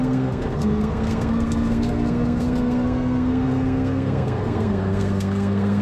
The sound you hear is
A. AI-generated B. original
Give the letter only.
A